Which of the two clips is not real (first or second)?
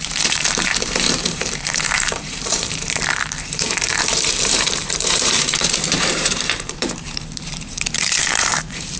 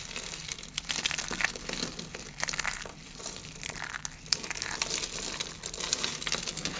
first